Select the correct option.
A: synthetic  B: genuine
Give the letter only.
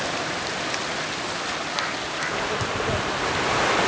B